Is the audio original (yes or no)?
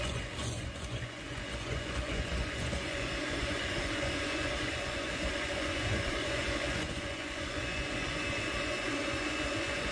no